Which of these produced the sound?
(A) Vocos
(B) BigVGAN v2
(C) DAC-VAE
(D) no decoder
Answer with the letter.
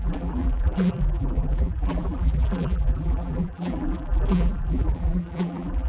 B